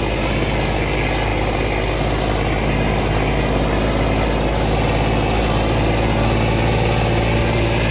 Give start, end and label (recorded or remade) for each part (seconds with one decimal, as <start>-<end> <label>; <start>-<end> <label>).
0.0-7.9 recorded